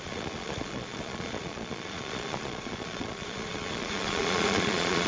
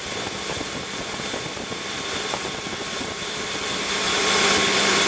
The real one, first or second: second